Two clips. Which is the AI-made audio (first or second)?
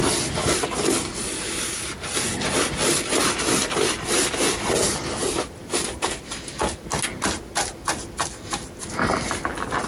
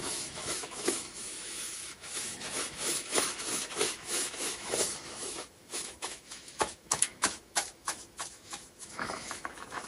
second